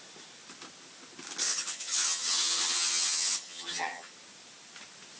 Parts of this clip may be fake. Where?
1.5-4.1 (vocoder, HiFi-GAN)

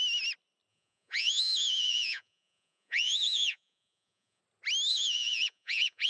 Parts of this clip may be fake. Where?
0.7-4.4 (vocoder, Vocos); 4.9-6.1

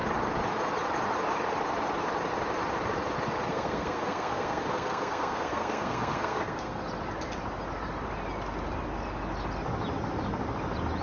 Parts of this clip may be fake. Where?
3.5-6.8 (codec, SNAC)

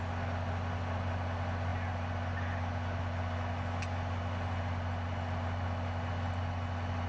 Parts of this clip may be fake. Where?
none